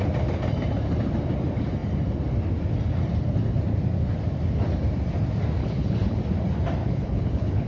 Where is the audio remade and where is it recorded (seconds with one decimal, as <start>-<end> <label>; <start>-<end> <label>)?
0.0-5.6 recorded; 5.6-6.2 remade; 6.2-6.8 recorded; 6.8-7.7 remade